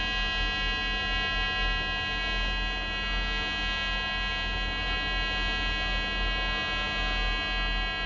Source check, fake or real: real